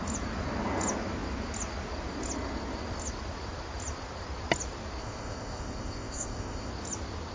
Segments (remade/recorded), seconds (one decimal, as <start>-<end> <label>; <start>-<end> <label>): 0.0-5.0 recorded; 5.0-6.7 remade; 6.7-7.3 recorded